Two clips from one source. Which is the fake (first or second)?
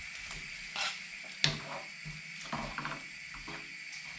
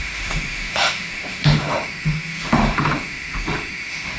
second